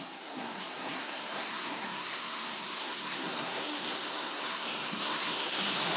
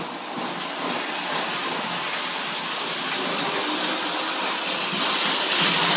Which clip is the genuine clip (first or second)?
second